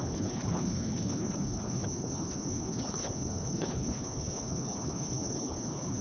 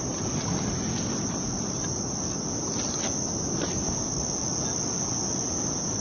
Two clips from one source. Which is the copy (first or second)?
first